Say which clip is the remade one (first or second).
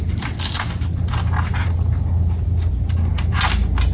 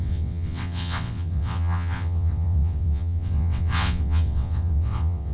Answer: second